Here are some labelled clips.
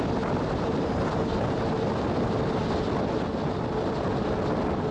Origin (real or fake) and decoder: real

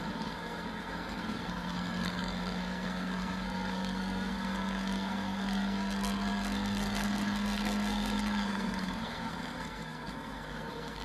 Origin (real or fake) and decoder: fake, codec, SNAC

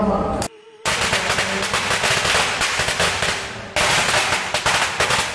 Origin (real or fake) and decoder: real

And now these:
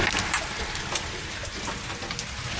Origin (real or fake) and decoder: real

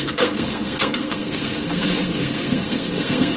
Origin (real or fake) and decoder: fake, codec, SNAC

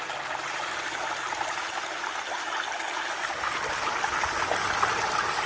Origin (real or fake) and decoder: real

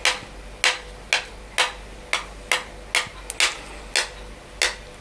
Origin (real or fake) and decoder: real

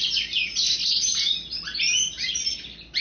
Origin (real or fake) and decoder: real